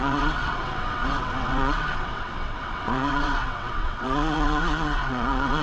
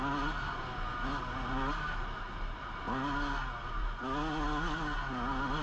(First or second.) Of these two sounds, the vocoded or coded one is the first